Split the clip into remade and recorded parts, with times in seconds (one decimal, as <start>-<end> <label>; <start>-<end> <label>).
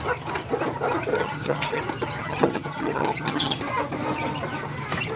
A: 0.0-1.1 recorded; 1.1-1.8 remade; 1.8-2.2 recorded; 2.2-3.6 remade; 3.6-5.2 recorded